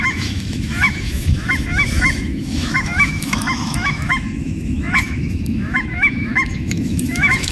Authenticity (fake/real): fake